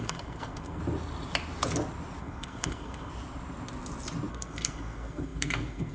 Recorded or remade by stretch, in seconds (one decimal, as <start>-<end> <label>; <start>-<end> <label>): 0.0-0.8 remade; 0.8-2.2 recorded; 2.2-3.1 remade; 3.1-4.3 recorded; 4.3-5.9 remade